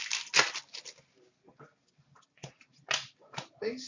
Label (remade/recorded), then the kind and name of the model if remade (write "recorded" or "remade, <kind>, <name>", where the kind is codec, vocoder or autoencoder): recorded